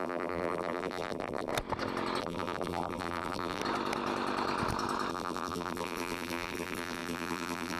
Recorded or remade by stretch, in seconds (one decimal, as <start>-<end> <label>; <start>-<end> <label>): 0.0-1.5 remade; 1.5-2.2 recorded; 2.2-3.6 remade; 3.6-5.1 recorded; 5.1-7.8 remade